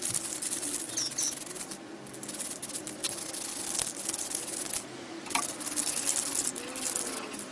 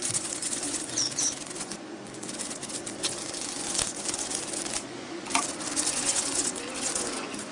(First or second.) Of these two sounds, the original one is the first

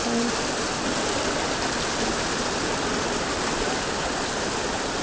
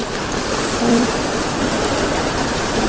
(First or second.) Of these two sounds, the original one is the first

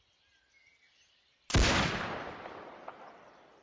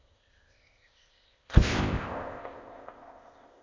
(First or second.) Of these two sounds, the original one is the first